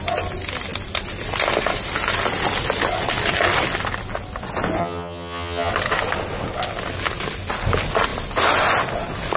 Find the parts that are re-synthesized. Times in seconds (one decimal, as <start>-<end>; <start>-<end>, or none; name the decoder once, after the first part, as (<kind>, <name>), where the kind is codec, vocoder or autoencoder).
4.8-5.7 (vocoder, HiFi-GAN)